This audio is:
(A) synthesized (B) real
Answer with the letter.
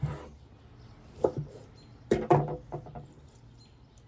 B